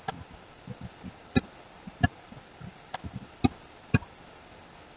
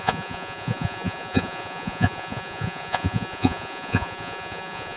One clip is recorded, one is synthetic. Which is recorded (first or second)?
first